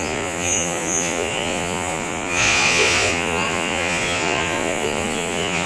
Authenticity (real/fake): fake